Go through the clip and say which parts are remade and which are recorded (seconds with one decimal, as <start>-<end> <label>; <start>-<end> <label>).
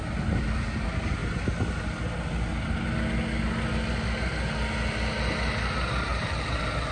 0.0-6.1 recorded; 6.1-6.9 remade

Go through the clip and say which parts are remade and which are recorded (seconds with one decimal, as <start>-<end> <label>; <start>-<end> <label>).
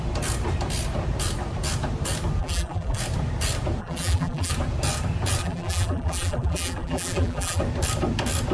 0.0-2.4 recorded; 2.4-3.0 remade; 3.0-3.8 recorded; 3.8-4.5 remade; 4.5-5.4 recorded; 5.4-7.6 remade; 7.6-8.5 recorded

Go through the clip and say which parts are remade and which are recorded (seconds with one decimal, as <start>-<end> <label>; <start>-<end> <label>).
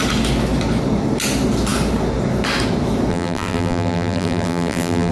0.0-3.1 recorded; 3.1-5.1 remade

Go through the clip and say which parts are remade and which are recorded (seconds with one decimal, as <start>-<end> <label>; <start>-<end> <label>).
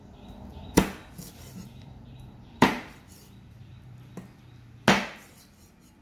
0.0-0.5 recorded; 0.5-4.1 remade; 4.1-6.0 recorded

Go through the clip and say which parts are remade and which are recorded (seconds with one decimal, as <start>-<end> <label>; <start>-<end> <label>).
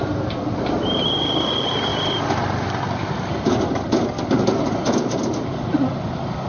0.0-1.9 remade; 1.9-4.5 recorded; 4.5-5.7 remade; 5.7-6.5 recorded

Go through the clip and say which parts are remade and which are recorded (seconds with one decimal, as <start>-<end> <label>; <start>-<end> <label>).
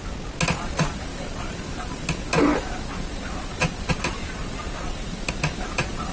0.0-1.1 recorded; 1.1-1.9 remade; 1.9-6.1 recorded